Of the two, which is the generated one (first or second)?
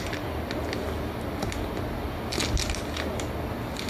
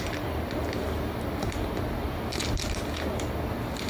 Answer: second